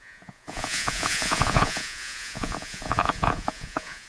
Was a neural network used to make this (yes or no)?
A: yes